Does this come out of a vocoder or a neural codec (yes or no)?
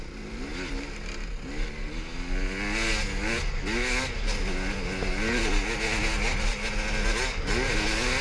no